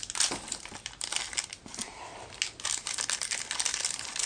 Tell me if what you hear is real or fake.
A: real